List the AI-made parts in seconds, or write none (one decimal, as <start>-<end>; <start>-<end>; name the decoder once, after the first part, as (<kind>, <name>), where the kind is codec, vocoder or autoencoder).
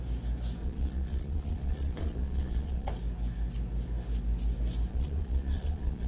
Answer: 0.6-2.9 (vocoder, Vocos); 4.9-6.1